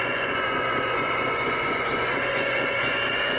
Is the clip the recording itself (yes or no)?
no